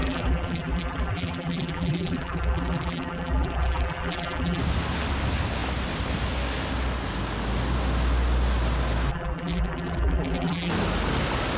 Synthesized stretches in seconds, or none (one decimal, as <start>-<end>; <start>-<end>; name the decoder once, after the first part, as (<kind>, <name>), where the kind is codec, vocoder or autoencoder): 0.0-4.6 (vocoder, BigVGAN v2); 9.1-10.7